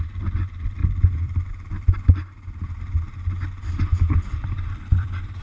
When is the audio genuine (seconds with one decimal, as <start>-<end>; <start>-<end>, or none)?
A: 0.0-5.4